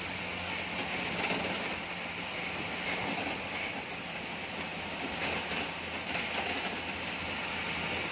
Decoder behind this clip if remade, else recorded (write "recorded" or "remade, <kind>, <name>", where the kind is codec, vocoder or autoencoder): recorded